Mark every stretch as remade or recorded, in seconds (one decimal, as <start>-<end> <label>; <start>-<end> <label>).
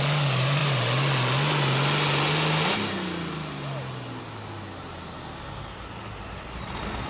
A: 0.0-7.1 recorded